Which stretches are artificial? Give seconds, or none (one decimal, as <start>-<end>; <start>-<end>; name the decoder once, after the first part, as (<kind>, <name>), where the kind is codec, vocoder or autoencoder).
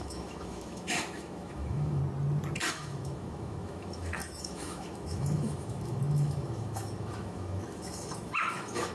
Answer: 0.0-2.0 (autoencoder, DAC-VAE); 2.7-8.9